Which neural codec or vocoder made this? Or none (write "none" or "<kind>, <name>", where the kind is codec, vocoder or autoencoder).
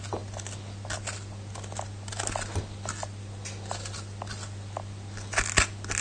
none